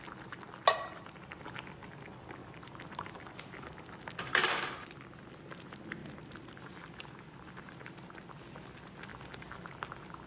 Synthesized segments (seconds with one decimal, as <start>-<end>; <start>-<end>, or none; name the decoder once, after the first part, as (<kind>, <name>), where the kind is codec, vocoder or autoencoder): 2.4-3.3 (vocoder, BigVGAN v2); 6.0-7.7; 9.1-9.8